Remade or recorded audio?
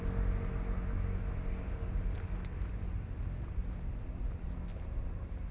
recorded